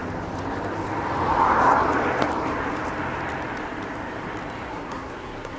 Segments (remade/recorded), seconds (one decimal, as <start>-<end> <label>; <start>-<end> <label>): 0.0-4.7 recorded; 4.7-5.6 remade